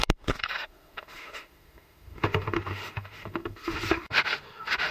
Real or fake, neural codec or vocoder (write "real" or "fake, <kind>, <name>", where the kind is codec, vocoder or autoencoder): fake, autoencoder, DAC-VAE